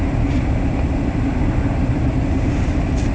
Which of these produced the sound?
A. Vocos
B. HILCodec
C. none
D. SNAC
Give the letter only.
C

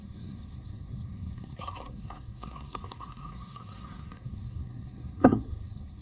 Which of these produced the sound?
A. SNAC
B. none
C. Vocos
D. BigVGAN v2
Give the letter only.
A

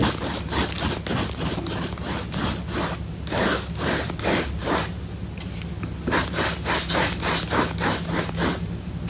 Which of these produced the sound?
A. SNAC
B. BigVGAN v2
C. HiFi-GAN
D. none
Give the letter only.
D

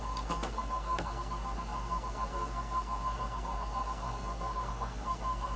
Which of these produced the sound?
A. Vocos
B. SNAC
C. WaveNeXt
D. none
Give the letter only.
B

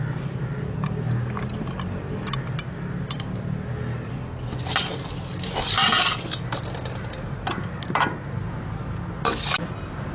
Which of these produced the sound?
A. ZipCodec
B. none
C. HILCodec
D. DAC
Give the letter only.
B